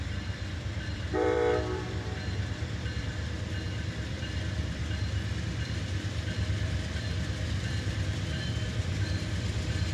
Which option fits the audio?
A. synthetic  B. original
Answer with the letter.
A